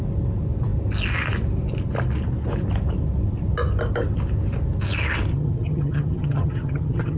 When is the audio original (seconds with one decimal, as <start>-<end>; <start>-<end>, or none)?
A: 0.0-5.3